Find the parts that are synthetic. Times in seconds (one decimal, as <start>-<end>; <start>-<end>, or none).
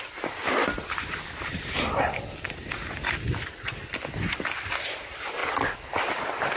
none